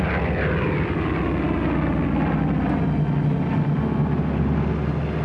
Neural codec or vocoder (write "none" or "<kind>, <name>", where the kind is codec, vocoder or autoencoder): none